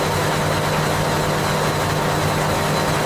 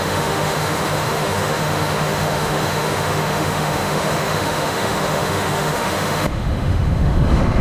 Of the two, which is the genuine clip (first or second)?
first